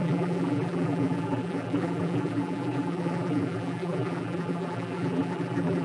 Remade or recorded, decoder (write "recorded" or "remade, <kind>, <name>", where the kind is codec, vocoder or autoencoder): remade, vocoder, BigVGAN v2